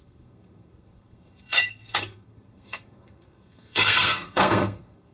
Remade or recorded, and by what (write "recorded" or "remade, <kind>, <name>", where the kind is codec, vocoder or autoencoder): remade, codec, SNAC